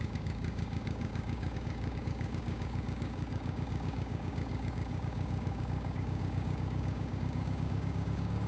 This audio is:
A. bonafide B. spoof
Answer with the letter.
B